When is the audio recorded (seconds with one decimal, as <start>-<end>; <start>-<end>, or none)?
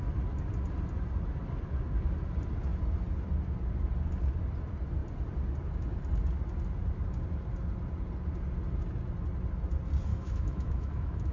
0.0-10.1